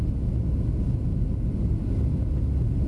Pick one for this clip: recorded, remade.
recorded